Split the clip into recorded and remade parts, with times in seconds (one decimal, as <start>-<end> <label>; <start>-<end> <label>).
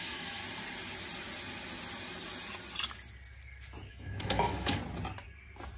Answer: 0.0-0.4 remade; 0.4-3.9 recorded; 3.9-4.8 remade; 4.8-5.8 recorded